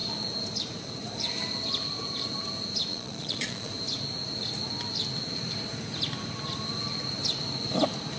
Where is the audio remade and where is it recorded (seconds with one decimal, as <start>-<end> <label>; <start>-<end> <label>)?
0.0-2.9 recorded; 2.9-3.7 remade; 3.7-8.2 recorded